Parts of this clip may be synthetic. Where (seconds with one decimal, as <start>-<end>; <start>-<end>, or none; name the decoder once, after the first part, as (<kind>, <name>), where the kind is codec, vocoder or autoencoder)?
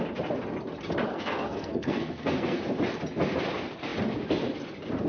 1.1-2.6 (codec, SNAC)